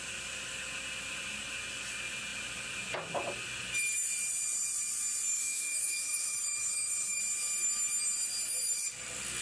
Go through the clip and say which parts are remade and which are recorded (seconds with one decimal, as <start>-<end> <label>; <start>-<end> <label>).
0.0-5.3 recorded; 5.3-7.2 remade; 7.2-9.4 recorded

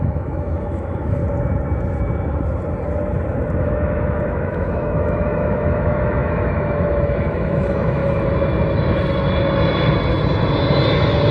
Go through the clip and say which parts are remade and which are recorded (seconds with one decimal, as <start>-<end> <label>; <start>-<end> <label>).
0.0-1.2 remade; 1.2-3.6 recorded; 3.6-8.0 remade; 8.0-11.3 recorded

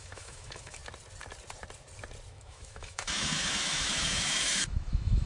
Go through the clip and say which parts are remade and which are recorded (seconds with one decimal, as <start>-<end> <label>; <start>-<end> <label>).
0.0-0.8 remade; 0.8-2.3 recorded; 2.3-5.3 remade

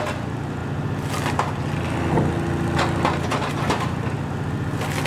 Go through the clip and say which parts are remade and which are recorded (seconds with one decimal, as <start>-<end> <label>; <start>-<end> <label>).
0.0-5.1 recorded

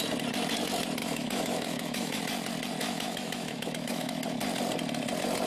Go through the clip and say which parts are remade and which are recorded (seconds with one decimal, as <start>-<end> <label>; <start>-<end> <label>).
0.0-1.0 recorded; 1.0-2.2 remade; 2.2-2.8 recorded; 2.8-4.1 remade; 4.1-5.5 recorded

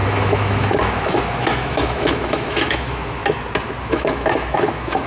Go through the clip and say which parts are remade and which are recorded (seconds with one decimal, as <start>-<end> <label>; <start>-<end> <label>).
0.0-3.2 remade; 3.2-3.8 recorded; 3.8-5.1 remade

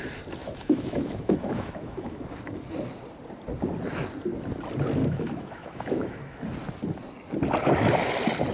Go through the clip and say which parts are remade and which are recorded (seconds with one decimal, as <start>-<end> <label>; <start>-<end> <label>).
0.0-0.4 recorded; 0.4-2.2 remade; 2.2-5.0 recorded; 5.0-6.4 remade; 6.4-8.5 recorded